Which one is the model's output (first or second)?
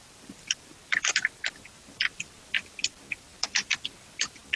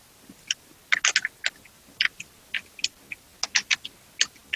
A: first